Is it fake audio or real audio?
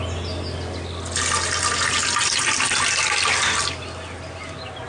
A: real